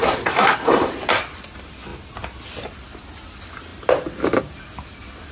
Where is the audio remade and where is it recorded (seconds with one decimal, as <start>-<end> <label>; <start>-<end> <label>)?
0.0-0.9 remade; 0.9-5.3 recorded